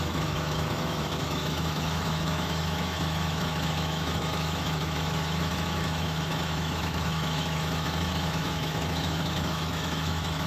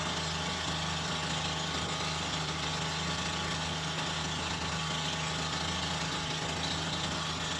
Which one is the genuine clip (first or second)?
second